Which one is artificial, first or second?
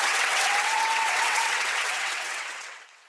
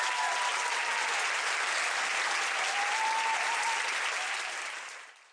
first